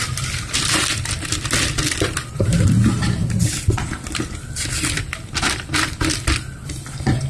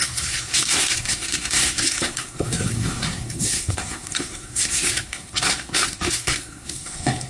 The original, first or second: first